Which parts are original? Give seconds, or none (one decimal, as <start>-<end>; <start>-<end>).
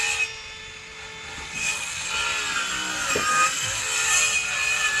0.0-1.6; 2.1-3.3; 3.8-5.0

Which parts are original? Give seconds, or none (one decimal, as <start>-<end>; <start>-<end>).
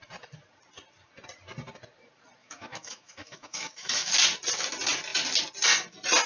0.0-2.4; 4.1-6.3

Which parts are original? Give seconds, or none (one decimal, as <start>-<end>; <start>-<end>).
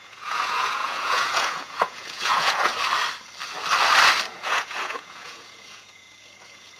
2.7-4.3